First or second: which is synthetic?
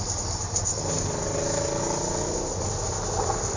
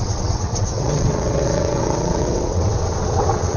second